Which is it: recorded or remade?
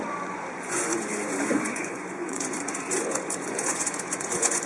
remade